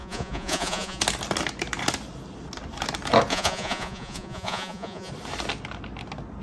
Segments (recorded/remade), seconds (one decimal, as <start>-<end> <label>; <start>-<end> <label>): 0.0-1.0 remade; 1.0-3.3 recorded; 3.3-5.1 remade; 5.1-6.4 recorded